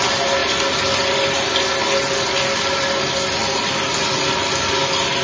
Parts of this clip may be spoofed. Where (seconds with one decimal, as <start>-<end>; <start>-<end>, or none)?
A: none